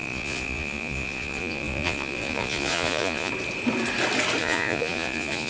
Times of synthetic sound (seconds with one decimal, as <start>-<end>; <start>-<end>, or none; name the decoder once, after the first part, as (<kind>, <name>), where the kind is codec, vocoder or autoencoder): 0.0-3.3 (vocoder, Vocos); 4.4-5.5